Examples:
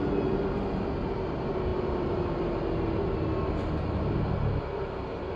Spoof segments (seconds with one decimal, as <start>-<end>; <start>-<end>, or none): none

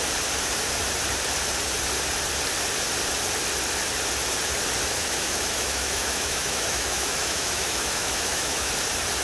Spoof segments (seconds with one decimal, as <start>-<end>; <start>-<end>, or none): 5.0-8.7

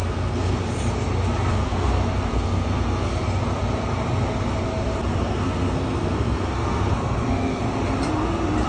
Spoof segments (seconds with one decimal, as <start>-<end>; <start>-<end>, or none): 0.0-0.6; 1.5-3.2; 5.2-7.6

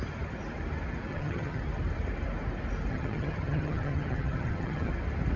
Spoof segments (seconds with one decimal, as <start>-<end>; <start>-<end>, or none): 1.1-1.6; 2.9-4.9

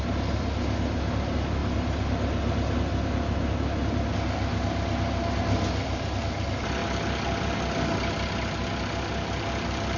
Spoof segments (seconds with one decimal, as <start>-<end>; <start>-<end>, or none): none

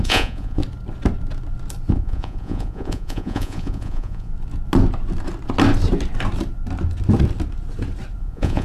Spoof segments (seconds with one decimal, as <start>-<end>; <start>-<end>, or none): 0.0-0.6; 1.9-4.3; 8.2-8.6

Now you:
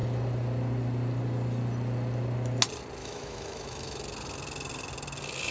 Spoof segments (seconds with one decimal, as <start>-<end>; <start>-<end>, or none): 3.0-4.0

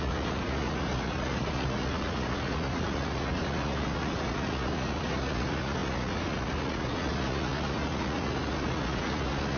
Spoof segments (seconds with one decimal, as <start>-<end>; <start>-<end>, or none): 0.0-9.6